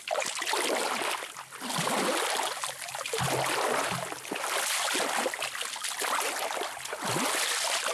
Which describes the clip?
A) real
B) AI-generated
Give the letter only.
A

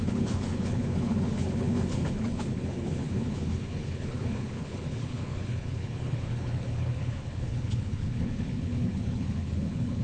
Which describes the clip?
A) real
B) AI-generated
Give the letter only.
B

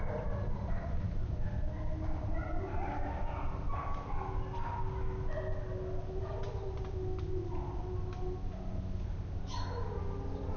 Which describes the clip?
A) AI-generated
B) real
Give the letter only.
B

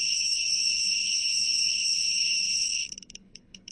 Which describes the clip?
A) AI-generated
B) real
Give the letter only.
A